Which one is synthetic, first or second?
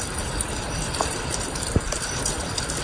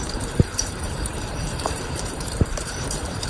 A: second